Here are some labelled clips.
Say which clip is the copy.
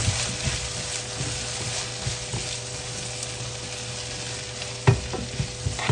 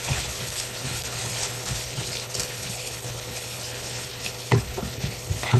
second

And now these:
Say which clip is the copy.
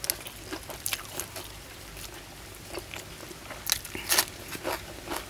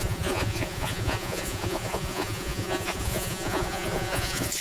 second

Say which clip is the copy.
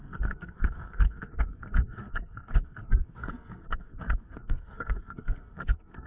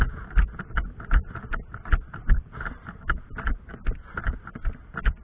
first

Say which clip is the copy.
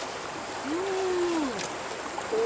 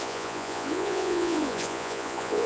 second